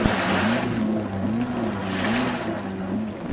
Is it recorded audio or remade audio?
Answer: recorded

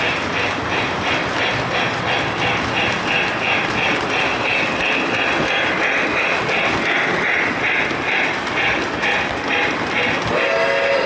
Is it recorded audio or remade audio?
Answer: recorded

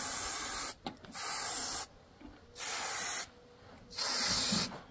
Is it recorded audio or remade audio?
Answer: recorded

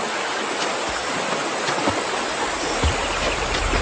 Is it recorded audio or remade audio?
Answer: recorded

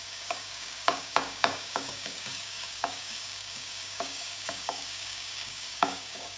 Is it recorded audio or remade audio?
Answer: remade